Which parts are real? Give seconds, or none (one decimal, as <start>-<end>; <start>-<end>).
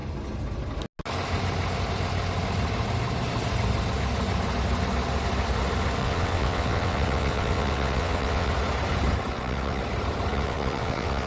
0.0-6.0; 8.5-9.3; 9.8-10.3